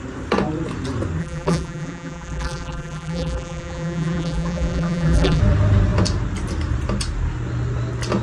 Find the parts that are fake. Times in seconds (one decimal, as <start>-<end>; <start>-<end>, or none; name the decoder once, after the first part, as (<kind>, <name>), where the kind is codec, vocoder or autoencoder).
1.2-5.4 (vocoder, BigVGAN v2)